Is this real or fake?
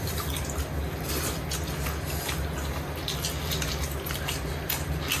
real